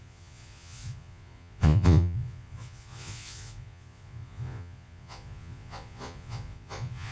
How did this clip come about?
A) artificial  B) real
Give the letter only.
A